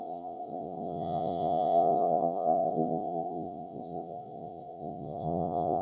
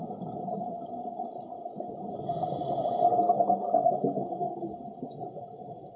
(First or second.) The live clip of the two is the second